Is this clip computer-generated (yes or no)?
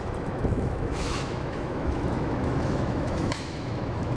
yes